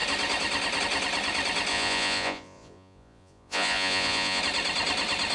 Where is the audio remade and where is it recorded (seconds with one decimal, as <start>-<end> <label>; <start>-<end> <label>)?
0.0-1.7 recorded; 1.7-4.4 remade; 4.4-5.3 recorded